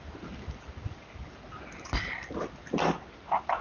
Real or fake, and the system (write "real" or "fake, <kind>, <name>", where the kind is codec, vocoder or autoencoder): real